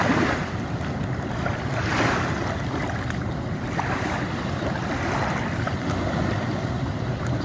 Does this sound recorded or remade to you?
recorded